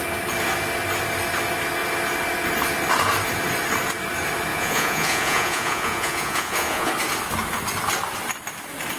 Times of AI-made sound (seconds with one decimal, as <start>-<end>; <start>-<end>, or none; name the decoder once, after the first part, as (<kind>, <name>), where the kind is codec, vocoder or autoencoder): 4.5-6.9 (vocoder, Vocos)